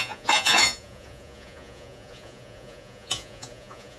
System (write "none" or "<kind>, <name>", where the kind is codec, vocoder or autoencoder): vocoder, Vocos